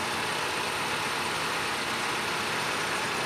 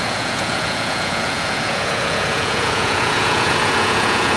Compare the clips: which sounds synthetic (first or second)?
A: second